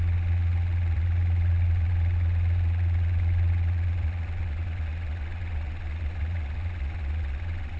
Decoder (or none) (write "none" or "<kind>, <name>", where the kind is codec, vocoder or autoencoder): vocoder, Vocos